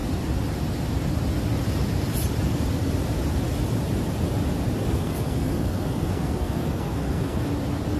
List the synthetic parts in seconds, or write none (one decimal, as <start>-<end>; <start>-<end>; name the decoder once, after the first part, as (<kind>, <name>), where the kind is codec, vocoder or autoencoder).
4.9-7.4 (codec, SNAC)